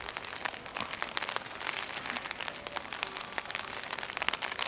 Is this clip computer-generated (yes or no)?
no